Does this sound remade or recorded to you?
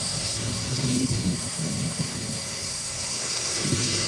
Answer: remade